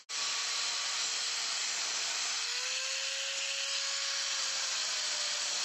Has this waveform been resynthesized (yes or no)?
no